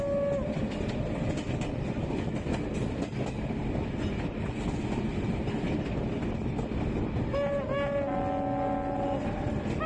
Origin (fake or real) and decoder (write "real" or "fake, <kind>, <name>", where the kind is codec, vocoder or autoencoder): real